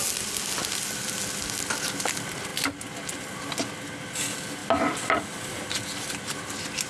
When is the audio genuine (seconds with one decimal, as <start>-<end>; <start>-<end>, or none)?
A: 0.0-6.9